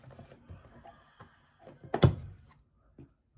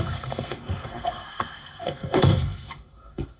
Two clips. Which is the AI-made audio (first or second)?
second